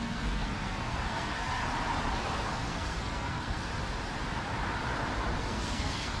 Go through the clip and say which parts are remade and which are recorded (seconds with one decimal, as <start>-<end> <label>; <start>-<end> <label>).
0.0-1.6 remade; 1.6-2.4 recorded; 2.4-3.7 remade; 3.7-5.4 recorded; 5.4-6.2 remade